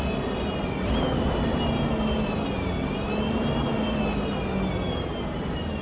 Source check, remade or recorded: recorded